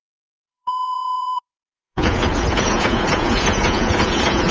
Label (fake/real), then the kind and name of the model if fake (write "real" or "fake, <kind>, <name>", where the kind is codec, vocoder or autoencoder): fake, vocoder, Vocos